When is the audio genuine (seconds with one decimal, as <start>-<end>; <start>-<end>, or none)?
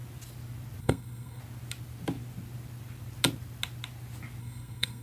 0.0-0.8; 1.4-4.4